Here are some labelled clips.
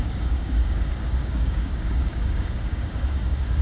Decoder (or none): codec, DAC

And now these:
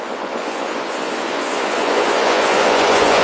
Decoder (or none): vocoder, Vocos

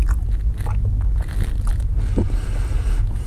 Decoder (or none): none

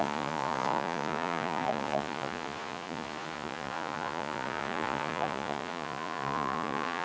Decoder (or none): vocoder, Vocos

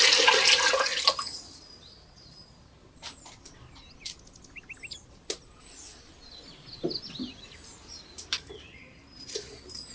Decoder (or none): none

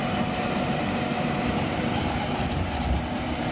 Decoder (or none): vocoder, BigVGAN v2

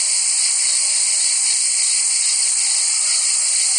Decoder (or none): none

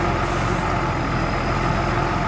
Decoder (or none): none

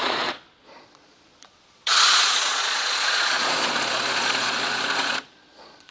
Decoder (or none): vocoder, Vocos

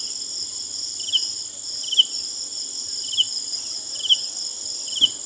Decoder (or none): none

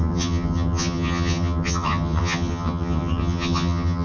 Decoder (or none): vocoder, HiFi-GAN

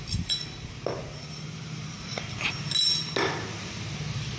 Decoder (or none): none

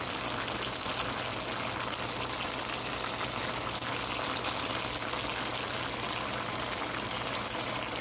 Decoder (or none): none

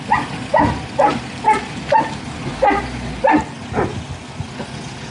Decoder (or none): none